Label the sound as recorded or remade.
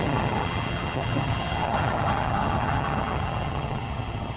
remade